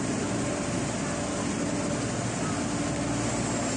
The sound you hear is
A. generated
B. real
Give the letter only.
B